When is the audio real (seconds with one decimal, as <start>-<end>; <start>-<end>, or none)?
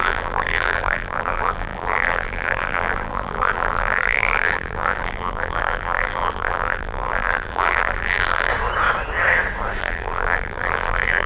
8.5-9.8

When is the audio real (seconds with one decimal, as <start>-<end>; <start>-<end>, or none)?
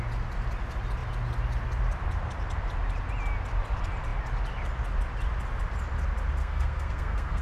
0.0-6.4